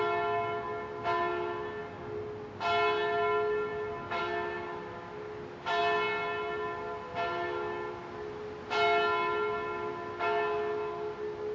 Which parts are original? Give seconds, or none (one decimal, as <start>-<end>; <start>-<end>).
0.0-11.5